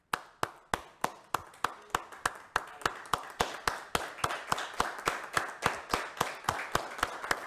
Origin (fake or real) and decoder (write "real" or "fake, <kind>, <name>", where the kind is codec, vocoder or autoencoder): real